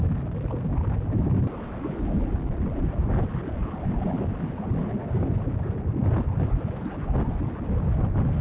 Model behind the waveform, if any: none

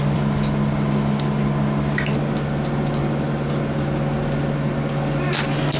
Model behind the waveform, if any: none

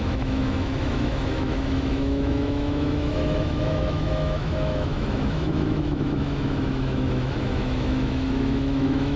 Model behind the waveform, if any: autoencoder, DAC-VAE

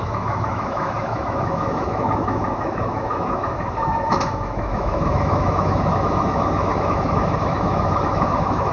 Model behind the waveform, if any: autoencoder, DAC-VAE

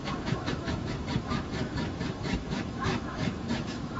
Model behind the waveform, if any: autoencoder, DAC-VAE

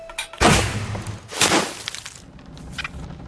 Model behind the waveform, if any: none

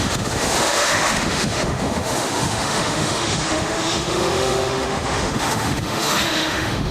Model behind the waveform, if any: autoencoder, DAC-VAE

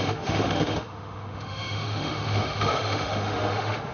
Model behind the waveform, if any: autoencoder, DAC-VAE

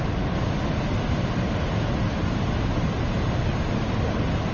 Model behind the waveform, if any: none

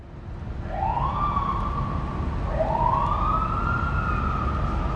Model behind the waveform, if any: none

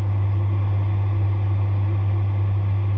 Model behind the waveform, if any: none